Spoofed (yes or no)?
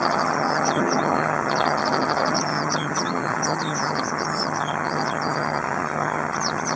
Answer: yes